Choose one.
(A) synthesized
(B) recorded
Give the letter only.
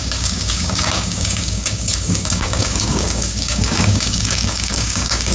A